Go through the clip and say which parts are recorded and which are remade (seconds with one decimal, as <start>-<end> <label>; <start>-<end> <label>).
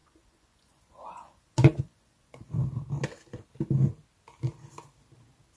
0.0-2.5 remade; 2.5-5.6 recorded